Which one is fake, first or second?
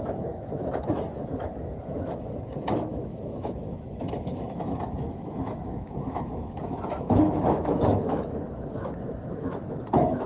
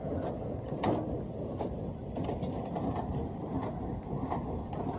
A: first